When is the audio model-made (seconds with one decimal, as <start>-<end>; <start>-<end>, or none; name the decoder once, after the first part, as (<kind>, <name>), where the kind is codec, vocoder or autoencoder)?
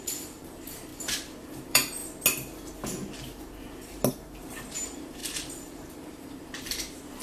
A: 0.0-0.9 (vocoder, BigVGAN v2); 1.4-2.0; 4.1-7.2